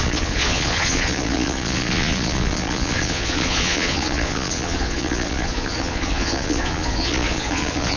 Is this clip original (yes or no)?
no